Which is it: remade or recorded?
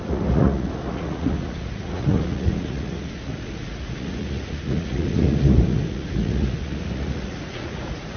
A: remade